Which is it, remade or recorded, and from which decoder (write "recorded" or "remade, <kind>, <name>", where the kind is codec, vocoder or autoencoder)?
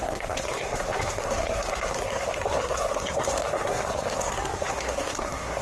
remade, codec, SNAC